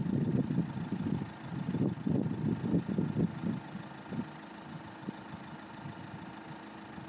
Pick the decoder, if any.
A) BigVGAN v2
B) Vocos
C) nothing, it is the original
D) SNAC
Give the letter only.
C